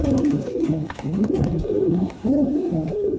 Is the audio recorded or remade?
remade